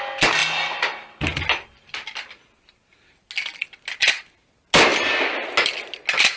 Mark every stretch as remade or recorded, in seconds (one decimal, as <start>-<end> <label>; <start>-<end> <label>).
0.0-6.4 recorded